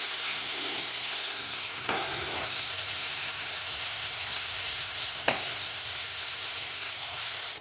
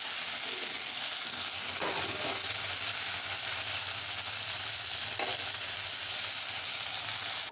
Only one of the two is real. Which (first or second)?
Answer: second